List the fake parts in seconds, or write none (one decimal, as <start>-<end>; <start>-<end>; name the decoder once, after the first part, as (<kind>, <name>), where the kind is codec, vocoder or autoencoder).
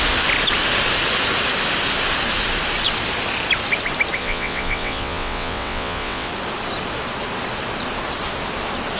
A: 4.2-6.3 (vocoder, WaveNeXt)